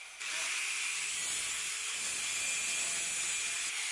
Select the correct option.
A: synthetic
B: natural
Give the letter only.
B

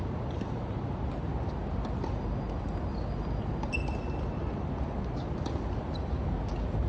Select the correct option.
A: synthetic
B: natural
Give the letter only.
B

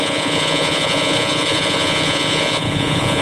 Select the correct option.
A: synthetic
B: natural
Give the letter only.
A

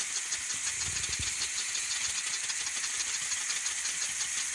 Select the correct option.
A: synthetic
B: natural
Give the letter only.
B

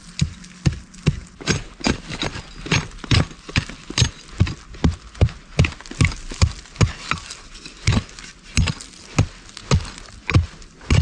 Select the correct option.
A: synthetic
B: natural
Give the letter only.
B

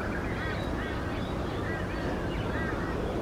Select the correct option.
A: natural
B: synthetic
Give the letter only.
A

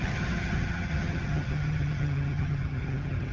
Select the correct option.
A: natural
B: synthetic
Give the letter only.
B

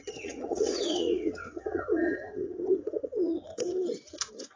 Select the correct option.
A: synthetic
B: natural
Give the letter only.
A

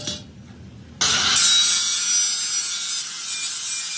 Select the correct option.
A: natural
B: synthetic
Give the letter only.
A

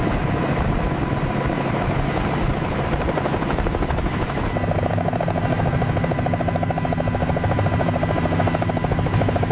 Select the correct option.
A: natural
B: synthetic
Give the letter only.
A